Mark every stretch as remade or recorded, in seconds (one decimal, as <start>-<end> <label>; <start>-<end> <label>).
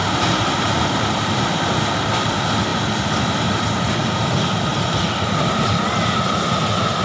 0.0-1.8 remade; 1.8-4.7 recorded; 4.7-6.3 remade; 6.3-7.0 recorded